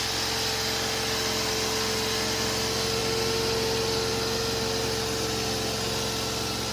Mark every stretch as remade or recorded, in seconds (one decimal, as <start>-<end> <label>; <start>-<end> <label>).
0.0-6.7 recorded